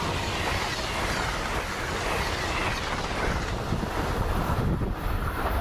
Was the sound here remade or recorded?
recorded